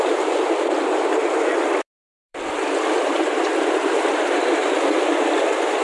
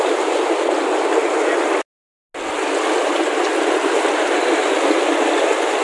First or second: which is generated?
first